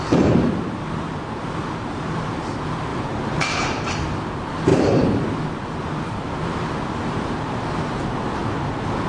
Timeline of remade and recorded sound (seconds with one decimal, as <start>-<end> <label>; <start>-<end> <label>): 0.0-1.6 recorded; 1.6-2.5 remade; 2.5-2.9 recorded; 2.9-3.9 remade; 3.9-4.7 recorded; 4.7-8.0 remade; 8.0-9.1 recorded